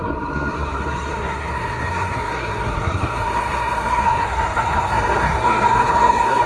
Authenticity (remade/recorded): remade